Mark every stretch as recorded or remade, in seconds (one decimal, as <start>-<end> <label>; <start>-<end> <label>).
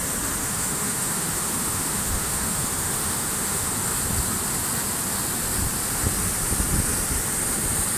0.0-0.4 recorded; 0.4-3.7 remade; 3.7-8.0 recorded